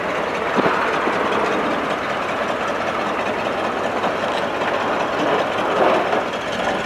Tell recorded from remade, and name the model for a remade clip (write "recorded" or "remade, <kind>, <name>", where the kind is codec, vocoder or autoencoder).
recorded